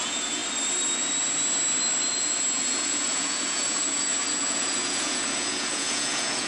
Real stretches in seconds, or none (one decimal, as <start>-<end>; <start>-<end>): 0.4-2.1